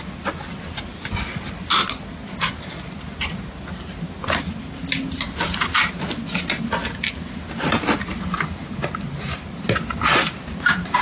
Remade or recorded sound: recorded